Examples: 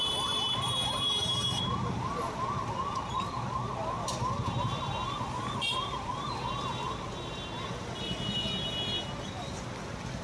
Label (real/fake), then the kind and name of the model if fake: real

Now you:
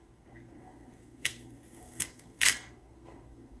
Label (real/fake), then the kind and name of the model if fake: fake, codec, SNAC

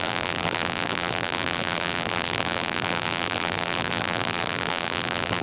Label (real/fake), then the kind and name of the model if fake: fake, vocoder, BigVGAN v2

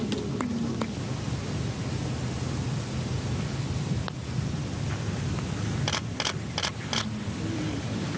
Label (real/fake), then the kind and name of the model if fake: real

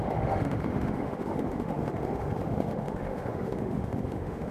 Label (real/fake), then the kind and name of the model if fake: fake, autoencoder, DAC-VAE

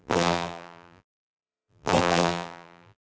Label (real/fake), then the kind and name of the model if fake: fake, vocoder, BigVGAN v2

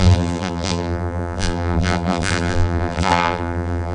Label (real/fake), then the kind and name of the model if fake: fake, vocoder, BigVGAN v2